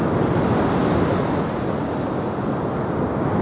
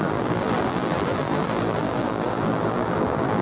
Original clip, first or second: first